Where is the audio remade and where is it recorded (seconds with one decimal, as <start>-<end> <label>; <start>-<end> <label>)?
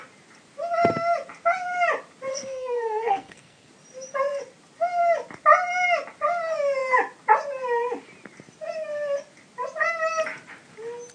0.0-2.3 recorded; 2.3-3.7 remade; 3.7-11.1 recorded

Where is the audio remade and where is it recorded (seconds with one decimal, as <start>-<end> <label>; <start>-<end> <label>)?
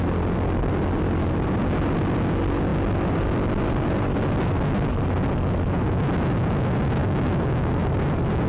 0.0-7.0 recorded; 7.0-7.8 remade; 7.8-8.5 recorded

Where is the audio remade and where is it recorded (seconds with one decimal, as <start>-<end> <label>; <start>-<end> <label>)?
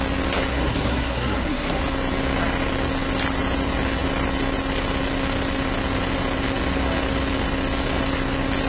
0.0-0.5 recorded; 0.5-1.8 remade; 1.8-8.7 recorded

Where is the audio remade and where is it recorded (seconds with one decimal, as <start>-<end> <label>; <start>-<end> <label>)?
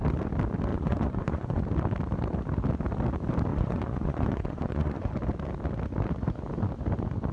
0.0-0.7 recorded; 0.7-1.6 remade; 1.6-3.5 recorded; 3.5-5.1 remade; 5.1-7.3 recorded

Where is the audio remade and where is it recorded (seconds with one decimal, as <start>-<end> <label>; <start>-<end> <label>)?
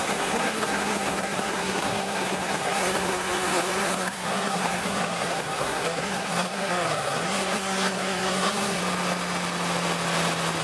0.0-8.8 remade; 8.8-10.6 recorded